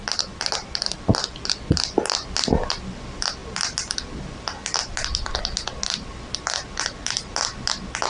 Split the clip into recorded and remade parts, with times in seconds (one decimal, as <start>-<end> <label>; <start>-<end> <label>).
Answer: 0.0-8.1 recorded